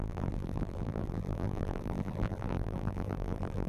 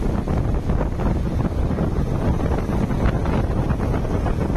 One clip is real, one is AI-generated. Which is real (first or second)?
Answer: second